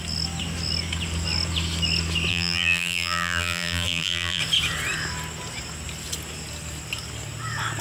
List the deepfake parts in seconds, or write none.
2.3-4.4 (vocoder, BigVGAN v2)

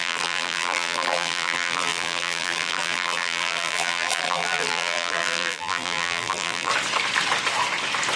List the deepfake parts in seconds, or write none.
0.0-6.7 (vocoder, BigVGAN v2)

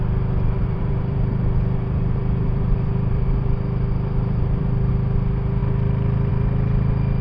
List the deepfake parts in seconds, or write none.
0.6-4.9 (vocoder, BigVGAN v2)

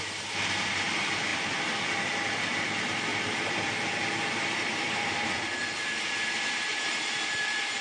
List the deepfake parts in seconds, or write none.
0.0-5.6 (vocoder, BigVGAN v2); 6.7-7.8

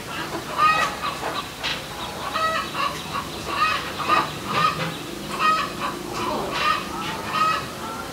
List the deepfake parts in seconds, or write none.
none

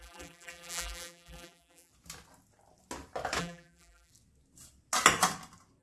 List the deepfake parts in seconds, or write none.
0.0-1.9 (vocoder, BigVGAN v2); 3.4-4.1